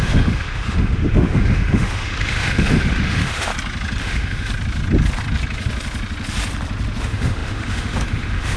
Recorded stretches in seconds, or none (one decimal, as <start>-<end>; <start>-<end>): 3.5-4.0; 4.5-7.0